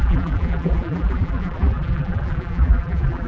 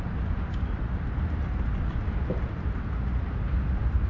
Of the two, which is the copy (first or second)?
first